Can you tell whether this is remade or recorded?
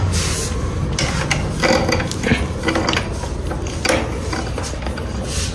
recorded